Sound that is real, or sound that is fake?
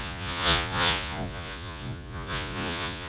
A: fake